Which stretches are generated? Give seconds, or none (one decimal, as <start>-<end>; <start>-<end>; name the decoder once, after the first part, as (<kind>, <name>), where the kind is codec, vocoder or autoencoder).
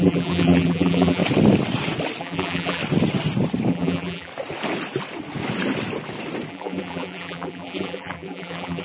0.0-1.2 (vocoder, BigVGAN v2); 2.2-2.8; 3.7-4.3; 6.5-8.8